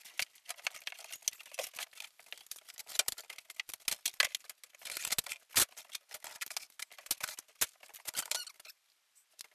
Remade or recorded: recorded